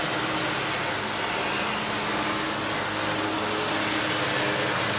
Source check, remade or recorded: recorded